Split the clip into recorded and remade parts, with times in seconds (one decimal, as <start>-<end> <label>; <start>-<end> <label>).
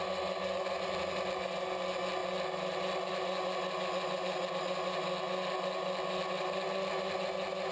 0.0-7.7 recorded